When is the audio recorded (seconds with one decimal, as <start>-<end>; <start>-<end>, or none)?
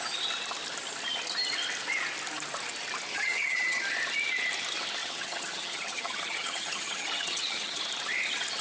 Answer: 0.0-3.1; 3.8-5.0; 7.8-8.6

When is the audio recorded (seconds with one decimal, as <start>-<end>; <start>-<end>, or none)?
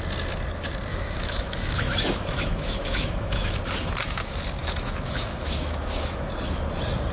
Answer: 0.0-0.9; 3.6-4.6; 6.3-7.1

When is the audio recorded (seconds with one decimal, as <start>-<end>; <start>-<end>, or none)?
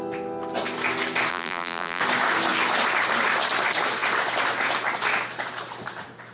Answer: 0.0-1.3; 2.0-6.3